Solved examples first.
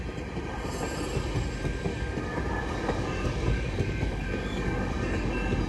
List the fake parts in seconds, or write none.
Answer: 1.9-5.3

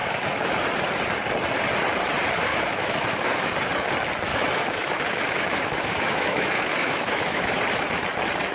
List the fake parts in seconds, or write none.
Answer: 0.0-0.5; 2.5-3.5; 4.3-7.5

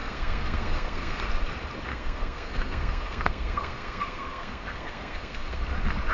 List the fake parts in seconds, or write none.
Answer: 0.0-1.3; 1.9-5.6

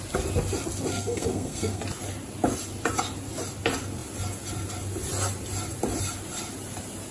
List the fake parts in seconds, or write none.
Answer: 0.9-1.8

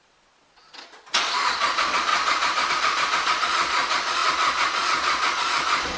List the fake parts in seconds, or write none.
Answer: 0.0-6.0

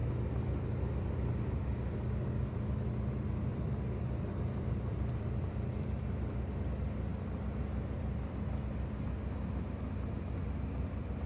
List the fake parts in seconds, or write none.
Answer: 3.5-5.5

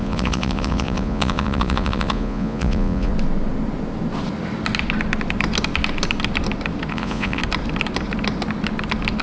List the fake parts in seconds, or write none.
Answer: 0.0-3.1; 6.9-7.4